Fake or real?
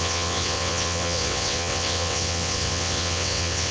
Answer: fake